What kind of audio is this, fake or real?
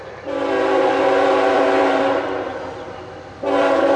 fake